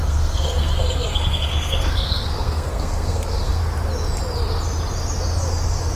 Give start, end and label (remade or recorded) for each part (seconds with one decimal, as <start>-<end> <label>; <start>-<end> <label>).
0.0-3.6 remade; 3.6-6.0 recorded